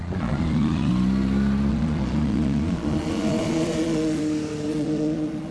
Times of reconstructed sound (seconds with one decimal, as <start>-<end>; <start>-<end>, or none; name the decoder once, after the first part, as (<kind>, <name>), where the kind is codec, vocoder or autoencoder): 0.0-0.9 (vocoder, Vocos); 1.7-4.2; 4.7-5.5